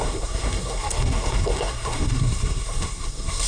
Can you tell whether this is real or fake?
fake